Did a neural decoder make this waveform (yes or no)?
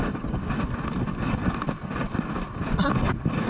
no